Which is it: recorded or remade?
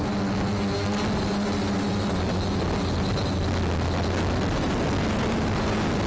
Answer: recorded